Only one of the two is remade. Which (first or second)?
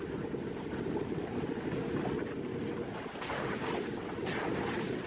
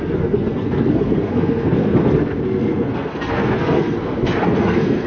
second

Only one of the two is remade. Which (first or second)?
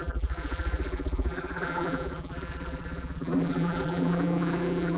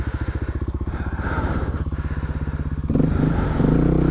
first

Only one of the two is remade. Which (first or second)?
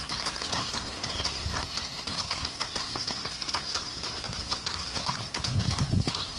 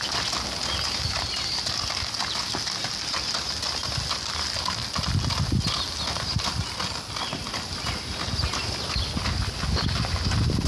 first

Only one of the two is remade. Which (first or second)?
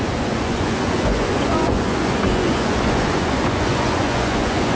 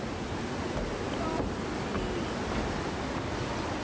first